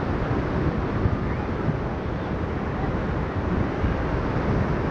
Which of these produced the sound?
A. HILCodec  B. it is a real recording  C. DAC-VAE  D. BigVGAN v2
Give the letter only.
B